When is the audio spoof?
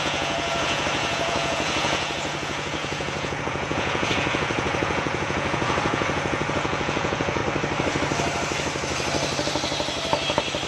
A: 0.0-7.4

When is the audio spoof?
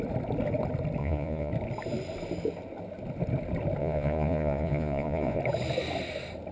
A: 1.0-1.5; 3.8-5.4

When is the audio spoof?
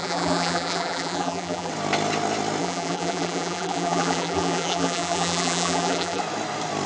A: 0.0-1.7; 2.6-6.2